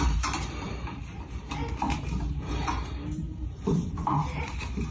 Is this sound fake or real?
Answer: fake